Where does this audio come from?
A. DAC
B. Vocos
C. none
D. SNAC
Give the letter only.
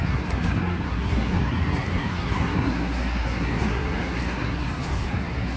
D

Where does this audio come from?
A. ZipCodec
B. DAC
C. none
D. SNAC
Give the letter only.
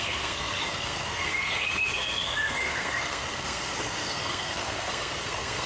D